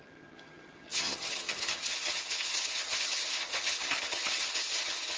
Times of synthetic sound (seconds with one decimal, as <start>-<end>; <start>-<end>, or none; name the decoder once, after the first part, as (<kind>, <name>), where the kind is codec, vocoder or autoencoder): 0.0-5.2 (vocoder, HiFi-GAN)